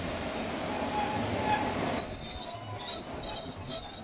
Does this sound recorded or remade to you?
recorded